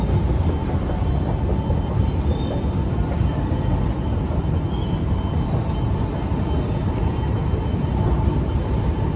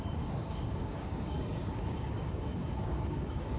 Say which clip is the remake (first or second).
second